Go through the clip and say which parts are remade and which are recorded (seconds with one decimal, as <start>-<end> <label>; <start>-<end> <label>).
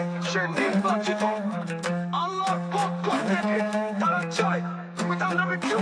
0.0-5.8 recorded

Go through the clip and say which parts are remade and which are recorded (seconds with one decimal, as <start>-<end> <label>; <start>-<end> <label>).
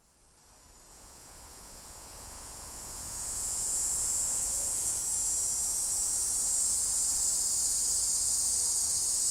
0.0-0.9 recorded; 0.9-5.0 remade; 5.0-9.3 recorded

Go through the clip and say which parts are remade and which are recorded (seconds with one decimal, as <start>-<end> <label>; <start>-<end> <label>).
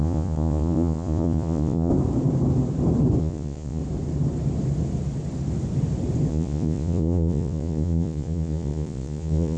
0.0-1.9 remade; 1.9-3.2 recorded; 3.2-3.8 remade; 3.8-6.3 recorded; 6.3-9.6 remade